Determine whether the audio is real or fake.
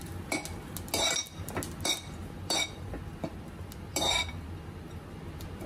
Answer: real